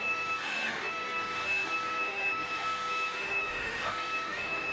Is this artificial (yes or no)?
yes